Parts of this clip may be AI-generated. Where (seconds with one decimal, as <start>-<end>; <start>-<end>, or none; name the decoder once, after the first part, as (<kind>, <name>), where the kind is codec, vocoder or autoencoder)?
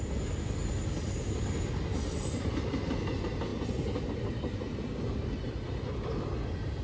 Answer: none